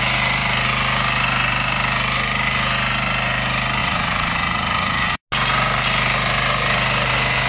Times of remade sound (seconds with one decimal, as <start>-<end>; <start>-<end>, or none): 3.8-5.2